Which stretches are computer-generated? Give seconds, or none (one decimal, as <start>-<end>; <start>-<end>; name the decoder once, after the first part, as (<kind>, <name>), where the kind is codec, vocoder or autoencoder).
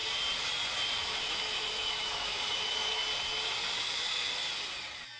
1.0-3.0 (autoencoder, DAC-VAE); 3.8-4.3